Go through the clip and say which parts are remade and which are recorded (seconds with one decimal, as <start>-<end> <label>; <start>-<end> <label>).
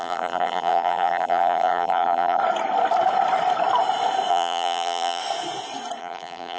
0.0-2.4 remade; 2.4-4.3 recorded; 4.3-5.2 remade; 5.2-6.0 recorded; 6.0-6.6 remade